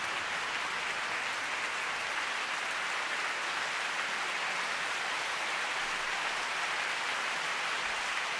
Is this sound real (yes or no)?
yes